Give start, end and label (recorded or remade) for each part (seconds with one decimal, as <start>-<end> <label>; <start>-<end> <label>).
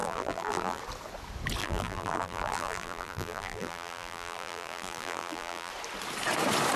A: 0.0-0.8 remade; 0.8-1.6 recorded; 1.6-5.7 remade; 5.7-6.8 recorded